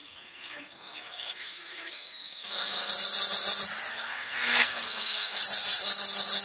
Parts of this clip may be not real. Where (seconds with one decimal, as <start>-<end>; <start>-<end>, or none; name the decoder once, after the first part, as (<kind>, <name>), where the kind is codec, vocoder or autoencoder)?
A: 0.0-2.9 (codec, SNAC); 3.9-5.4